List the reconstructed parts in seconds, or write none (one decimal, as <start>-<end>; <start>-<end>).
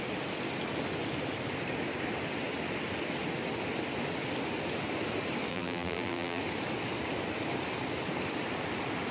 5.5-6.4